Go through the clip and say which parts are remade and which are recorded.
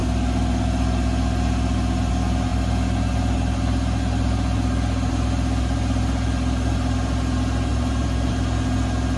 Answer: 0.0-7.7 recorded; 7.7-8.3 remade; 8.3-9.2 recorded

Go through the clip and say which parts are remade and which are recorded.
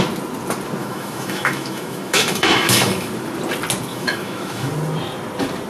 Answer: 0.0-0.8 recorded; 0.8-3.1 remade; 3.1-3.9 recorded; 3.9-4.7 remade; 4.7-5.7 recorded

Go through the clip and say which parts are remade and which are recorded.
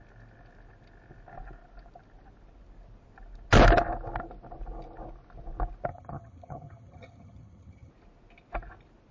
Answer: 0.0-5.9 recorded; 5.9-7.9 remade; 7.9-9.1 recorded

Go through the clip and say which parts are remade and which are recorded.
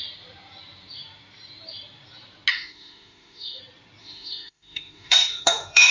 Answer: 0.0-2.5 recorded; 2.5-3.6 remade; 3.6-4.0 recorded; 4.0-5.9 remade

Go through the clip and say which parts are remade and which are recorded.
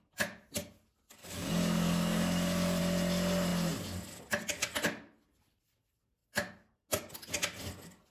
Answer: 0.0-1.2 recorded; 1.2-2.8 remade; 2.8-8.1 recorded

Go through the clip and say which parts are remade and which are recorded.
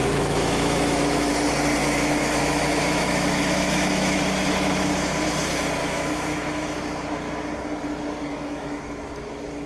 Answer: 0.0-1.3 remade; 1.3-1.8 recorded; 1.8-4.2 remade; 4.2-5.8 recorded; 5.8-6.8 remade; 6.8-8.3 recorded; 8.3-8.8 remade; 8.8-9.7 recorded